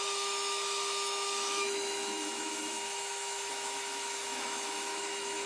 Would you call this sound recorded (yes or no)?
no